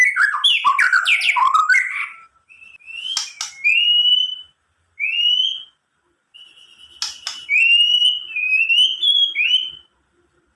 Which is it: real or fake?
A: real